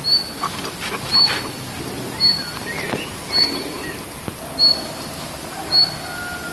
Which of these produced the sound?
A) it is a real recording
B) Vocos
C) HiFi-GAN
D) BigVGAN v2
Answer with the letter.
A